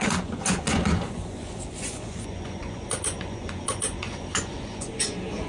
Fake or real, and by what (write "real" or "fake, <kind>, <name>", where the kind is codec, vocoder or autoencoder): fake, vocoder, Vocos